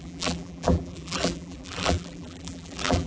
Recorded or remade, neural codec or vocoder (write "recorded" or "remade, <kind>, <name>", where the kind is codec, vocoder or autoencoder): remade, vocoder, BigVGAN v2